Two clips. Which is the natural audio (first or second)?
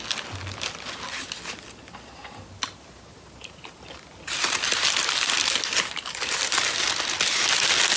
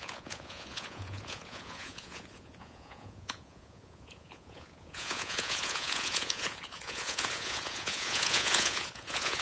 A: first